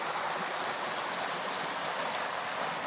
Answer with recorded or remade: recorded